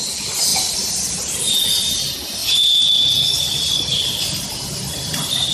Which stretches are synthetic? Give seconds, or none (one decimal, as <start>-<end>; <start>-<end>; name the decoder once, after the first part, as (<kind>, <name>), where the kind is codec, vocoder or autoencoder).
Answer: none